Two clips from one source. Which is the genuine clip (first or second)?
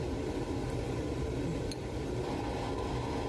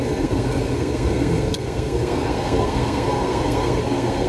first